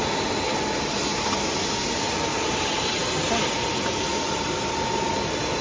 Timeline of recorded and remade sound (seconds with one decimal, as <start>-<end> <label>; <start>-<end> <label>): 0.0-5.6 recorded